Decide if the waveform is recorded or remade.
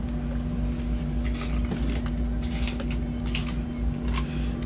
recorded